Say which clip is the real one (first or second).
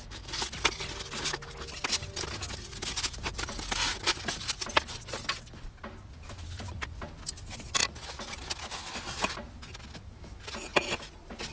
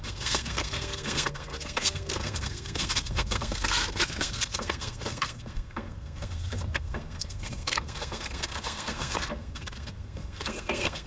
first